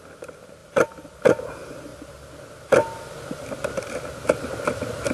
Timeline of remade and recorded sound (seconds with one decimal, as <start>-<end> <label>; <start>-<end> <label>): 0.0-0.6 recorded; 0.6-1.2 remade; 1.2-5.1 recorded